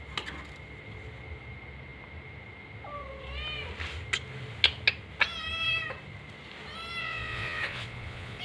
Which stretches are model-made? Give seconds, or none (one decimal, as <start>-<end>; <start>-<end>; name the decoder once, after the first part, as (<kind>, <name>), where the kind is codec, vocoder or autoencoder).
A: 7.0-8.4 (vocoder, Vocos)